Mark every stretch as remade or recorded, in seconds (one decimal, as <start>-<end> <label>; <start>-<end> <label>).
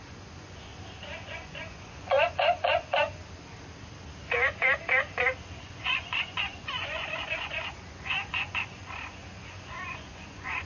0.0-0.7 remade; 0.7-1.2 recorded; 1.2-3.2 remade; 3.2-5.6 recorded; 5.6-10.7 remade